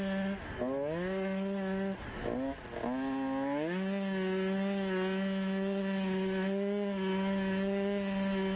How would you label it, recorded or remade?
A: recorded